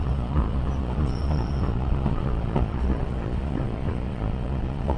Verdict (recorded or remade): remade